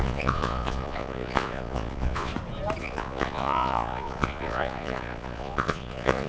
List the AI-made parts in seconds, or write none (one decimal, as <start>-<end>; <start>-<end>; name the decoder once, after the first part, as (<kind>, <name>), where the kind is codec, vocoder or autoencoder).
0.0-2.3 (vocoder, Vocos); 2.8-6.3